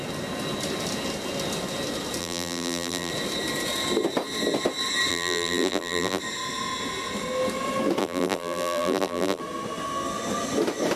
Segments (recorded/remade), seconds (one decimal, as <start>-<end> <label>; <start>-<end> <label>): 0.0-2.2 recorded; 2.2-3.1 remade; 3.1-5.1 recorded; 5.1-6.2 remade; 6.2-8.0 recorded; 8.0-9.4 remade; 9.4-11.0 recorded